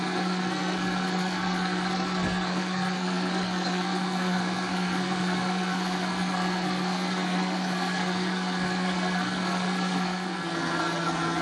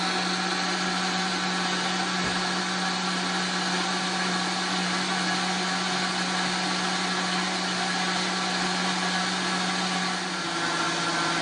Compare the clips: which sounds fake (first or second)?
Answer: first